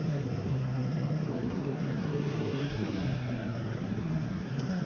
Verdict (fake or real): fake